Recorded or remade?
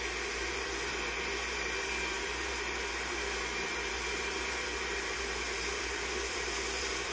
remade